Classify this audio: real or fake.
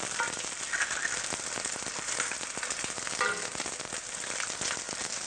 real